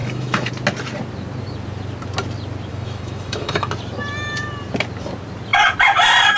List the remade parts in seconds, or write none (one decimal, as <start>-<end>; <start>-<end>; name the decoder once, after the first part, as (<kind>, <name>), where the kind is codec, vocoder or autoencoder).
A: 0.0-0.5 (autoencoder, DAC-VAE); 2.7-3.7